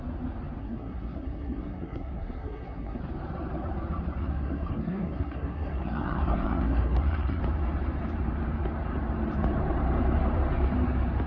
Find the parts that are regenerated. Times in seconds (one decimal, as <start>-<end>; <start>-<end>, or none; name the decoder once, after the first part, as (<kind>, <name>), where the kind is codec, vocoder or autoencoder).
0.6-3.0 (codec, SNAC); 4.2-7.4